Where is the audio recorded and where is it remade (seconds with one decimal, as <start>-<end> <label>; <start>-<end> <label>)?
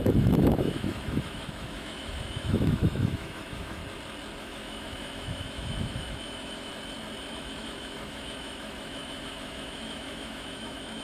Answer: 0.0-3.8 remade; 3.8-4.4 recorded; 4.4-6.7 remade; 6.7-7.3 recorded; 7.3-11.0 remade